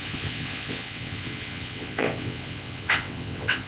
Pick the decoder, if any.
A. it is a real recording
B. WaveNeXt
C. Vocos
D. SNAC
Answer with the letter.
B